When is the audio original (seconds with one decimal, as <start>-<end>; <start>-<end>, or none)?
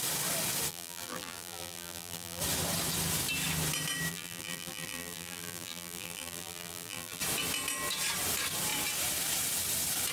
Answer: 0.0-0.7; 2.4-4.1; 7.2-10.1